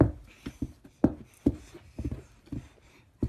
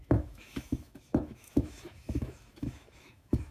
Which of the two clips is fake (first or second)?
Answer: second